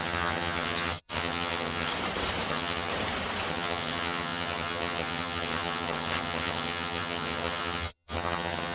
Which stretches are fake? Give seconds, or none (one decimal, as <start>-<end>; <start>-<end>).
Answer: 0.0-1.9; 2.5-2.9; 3.5-8.7